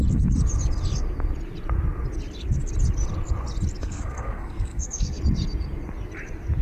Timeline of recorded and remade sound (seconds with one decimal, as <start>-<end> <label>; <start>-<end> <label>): 0.0-3.8 recorded; 3.8-5.2 remade; 5.2-6.6 recorded